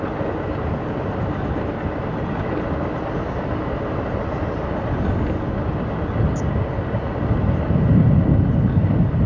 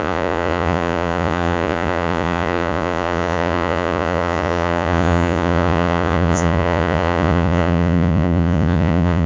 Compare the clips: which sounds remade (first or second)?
second